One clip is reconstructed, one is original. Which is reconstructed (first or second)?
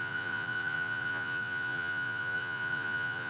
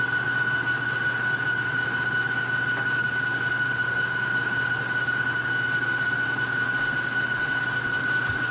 first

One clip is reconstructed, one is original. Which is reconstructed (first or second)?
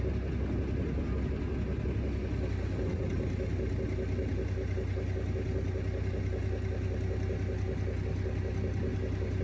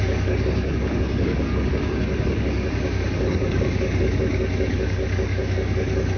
second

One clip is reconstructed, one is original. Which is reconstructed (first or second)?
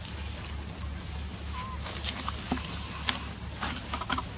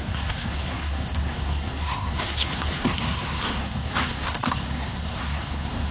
second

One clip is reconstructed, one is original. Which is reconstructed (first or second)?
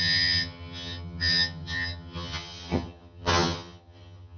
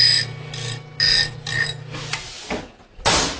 first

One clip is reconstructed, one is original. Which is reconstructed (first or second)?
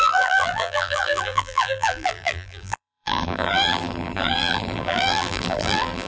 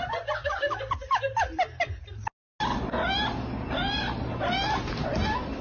first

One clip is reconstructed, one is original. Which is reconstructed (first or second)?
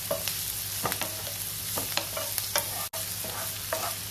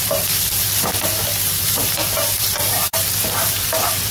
second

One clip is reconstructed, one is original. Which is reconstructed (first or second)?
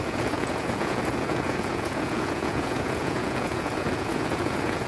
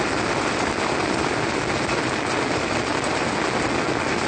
first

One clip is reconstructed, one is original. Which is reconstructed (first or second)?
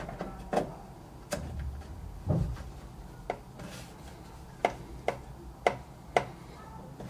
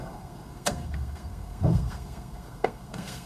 second